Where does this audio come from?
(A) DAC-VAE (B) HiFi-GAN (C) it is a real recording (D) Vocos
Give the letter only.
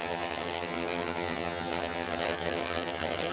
B